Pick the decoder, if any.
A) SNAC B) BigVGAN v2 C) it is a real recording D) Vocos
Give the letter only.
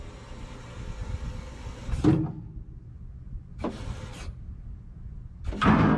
C